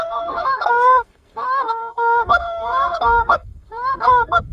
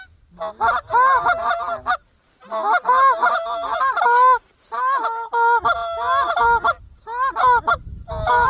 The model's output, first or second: first